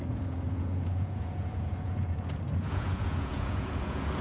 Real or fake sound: fake